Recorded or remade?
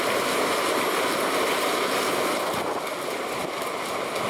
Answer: recorded